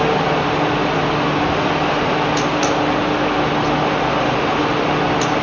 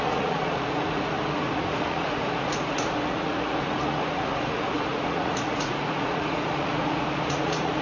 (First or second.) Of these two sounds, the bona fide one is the first